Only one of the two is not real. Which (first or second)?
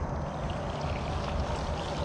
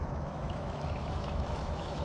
second